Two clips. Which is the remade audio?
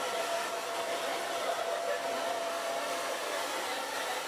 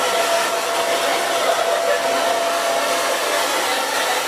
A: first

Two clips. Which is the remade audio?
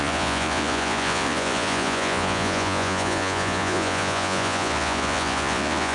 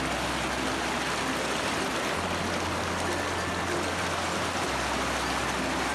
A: first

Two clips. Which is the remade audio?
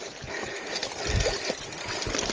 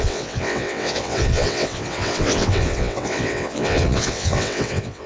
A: second